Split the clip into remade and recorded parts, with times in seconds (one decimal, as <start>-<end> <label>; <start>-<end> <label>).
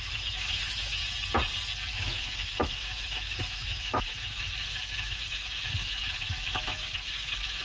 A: 0.0-1.0 remade; 1.0-1.9 recorded; 1.9-7.6 remade